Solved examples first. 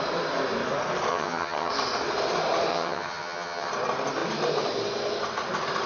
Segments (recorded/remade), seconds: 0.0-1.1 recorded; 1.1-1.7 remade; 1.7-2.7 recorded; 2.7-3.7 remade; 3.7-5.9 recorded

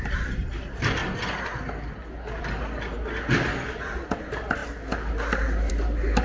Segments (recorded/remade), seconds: 0.0-6.2 recorded

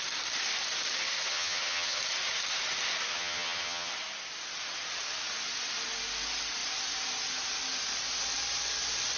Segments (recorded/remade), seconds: 0.0-1.3 recorded; 1.3-2.0 remade; 2.0-3.1 recorded; 3.1-3.9 remade; 3.9-9.2 recorded